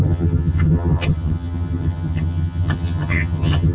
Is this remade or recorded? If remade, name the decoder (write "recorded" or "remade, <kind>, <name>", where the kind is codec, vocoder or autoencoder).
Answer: remade, vocoder, HiFi-GAN